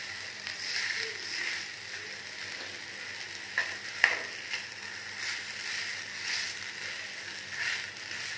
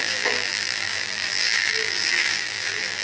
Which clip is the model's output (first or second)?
second